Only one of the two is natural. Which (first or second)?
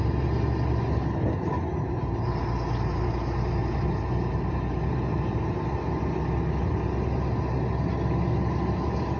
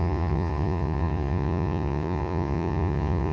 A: first